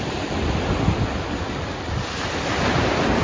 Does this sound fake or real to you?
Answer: real